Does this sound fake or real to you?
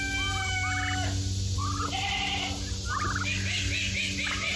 real